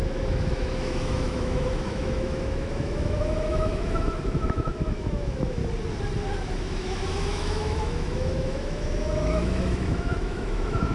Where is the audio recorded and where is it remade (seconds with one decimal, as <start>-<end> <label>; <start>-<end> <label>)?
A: 0.0-5.6 remade; 5.6-6.6 recorded; 6.6-10.9 remade